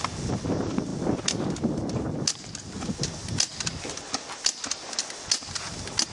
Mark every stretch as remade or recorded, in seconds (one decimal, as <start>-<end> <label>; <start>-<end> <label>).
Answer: 0.0-6.1 recorded